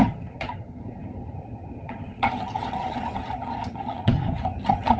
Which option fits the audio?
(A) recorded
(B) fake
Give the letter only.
B